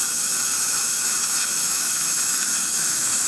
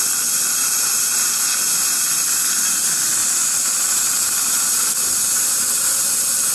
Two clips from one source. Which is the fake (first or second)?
first